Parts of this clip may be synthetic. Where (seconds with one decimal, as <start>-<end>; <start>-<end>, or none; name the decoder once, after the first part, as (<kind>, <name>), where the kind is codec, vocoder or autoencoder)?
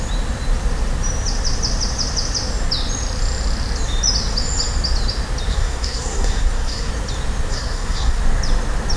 5.5-6.9 (codec, SNAC); 7.5-8.2